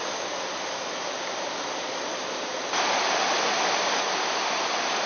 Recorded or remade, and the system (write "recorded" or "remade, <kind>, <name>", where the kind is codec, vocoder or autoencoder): recorded